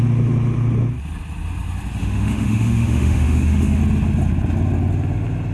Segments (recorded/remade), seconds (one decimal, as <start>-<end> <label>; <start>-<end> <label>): 0.0-2.0 recorded; 2.0-3.8 remade; 3.8-5.5 recorded